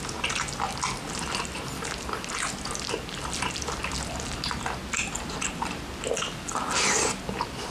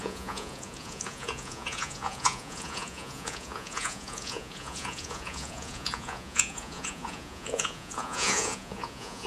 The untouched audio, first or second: first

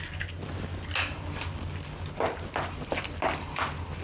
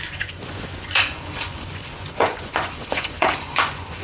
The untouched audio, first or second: first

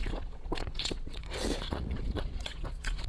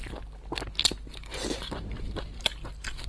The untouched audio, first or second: second